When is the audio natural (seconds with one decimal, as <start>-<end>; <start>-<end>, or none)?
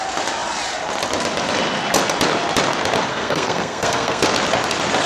0.0-3.1; 4.2-5.1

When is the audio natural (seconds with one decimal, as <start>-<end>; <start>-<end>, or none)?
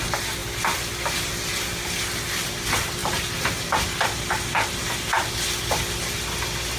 0.0-6.8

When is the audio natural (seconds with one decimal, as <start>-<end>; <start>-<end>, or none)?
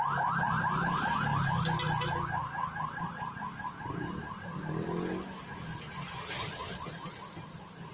0.0-7.9